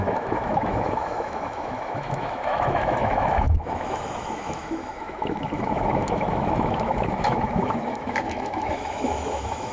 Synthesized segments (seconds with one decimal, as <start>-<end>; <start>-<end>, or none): 0.0-9.7